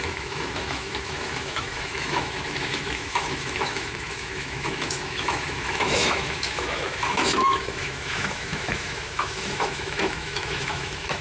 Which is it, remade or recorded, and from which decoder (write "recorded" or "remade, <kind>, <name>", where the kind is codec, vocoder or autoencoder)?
remade, autoencoder, DAC-VAE